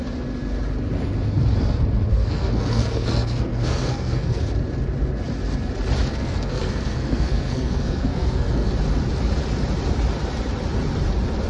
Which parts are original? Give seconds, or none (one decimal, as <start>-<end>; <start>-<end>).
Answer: 0.0-2.1; 4.4-6.1; 8.7-11.5